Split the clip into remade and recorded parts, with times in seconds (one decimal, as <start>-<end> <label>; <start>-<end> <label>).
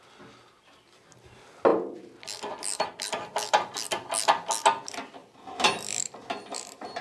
0.0-7.0 recorded